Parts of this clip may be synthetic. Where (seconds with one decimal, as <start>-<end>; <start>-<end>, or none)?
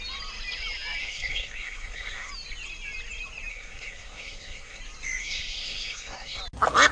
1.0-2.3; 3.5-4.8; 5.2-6.4